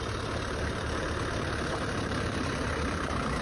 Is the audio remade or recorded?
remade